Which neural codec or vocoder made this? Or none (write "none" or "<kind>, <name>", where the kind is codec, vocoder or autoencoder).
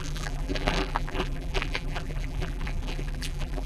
vocoder, BigVGAN v2